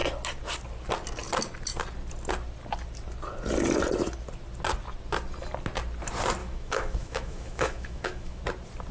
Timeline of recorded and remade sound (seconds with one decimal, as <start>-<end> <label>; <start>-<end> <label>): 0.0-6.4 recorded; 6.4-8.4 remade; 8.4-8.9 recorded